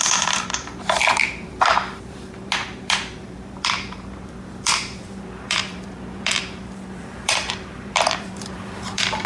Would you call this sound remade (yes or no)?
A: yes